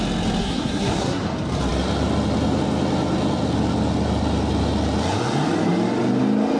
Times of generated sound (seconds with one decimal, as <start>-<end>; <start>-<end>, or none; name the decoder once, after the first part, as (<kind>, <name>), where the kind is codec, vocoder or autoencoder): 0.4-1.2 (codec, SNAC)